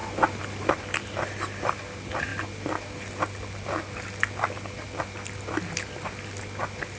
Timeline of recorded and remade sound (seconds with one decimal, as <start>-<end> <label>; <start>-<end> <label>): 0.0-7.0 recorded